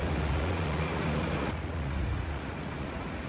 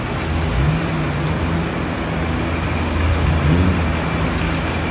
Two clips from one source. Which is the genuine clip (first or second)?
second